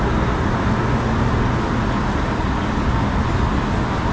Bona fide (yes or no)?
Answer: yes